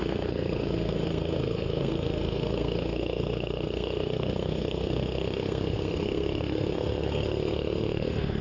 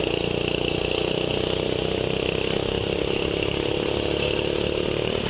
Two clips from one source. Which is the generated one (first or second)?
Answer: first